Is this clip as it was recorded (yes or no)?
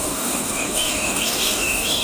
no